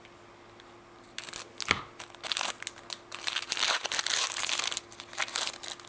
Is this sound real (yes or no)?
yes